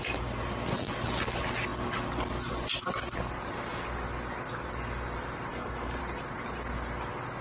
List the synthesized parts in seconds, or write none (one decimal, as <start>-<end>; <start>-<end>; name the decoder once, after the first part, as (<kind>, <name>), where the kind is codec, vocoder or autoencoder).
5.5-6.0 (codec, HILCodec)